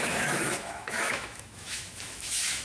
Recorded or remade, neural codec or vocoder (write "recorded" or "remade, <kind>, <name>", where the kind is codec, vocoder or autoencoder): remade, autoencoder, DAC-VAE